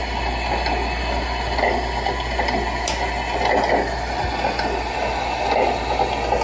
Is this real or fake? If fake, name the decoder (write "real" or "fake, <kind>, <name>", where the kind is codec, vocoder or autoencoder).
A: real